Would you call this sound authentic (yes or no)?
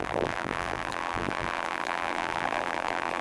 no